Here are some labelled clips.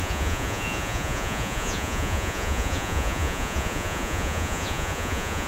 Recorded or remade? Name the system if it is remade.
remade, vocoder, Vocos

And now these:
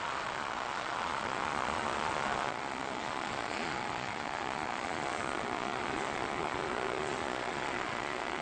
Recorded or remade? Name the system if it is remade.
remade, vocoder, Vocos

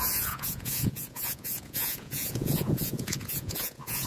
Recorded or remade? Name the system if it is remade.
remade, vocoder, Vocos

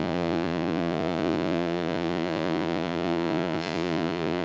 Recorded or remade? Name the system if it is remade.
remade, vocoder, Vocos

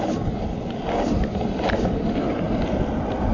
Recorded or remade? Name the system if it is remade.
recorded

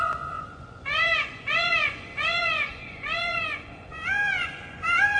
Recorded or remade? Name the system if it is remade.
remade, vocoder, Vocos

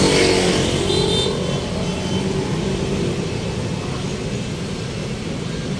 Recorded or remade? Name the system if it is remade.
recorded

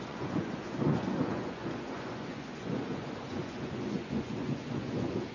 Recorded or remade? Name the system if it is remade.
remade, vocoder, Vocos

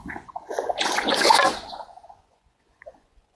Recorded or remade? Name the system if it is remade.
remade, vocoder, Vocos